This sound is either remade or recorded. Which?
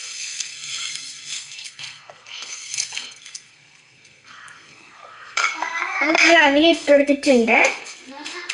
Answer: remade